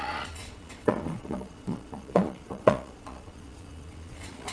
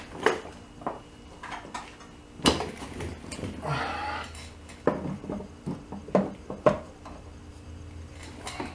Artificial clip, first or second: first